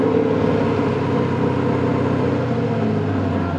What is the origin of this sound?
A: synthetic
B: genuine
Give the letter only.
B